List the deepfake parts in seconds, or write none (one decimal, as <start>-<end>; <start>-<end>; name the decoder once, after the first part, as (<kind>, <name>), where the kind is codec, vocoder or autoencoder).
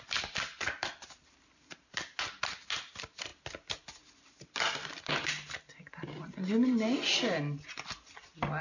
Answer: none